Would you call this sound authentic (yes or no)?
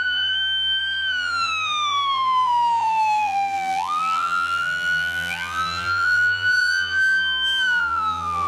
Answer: no